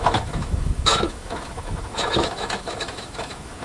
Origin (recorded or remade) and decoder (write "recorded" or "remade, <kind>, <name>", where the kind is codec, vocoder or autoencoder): remade, autoencoder, DAC-VAE